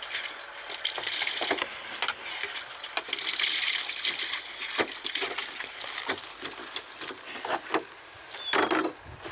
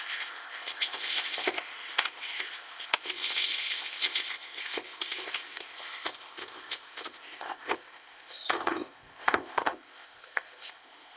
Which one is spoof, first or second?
second